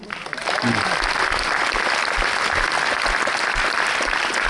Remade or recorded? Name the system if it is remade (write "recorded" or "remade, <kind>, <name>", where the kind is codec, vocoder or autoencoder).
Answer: recorded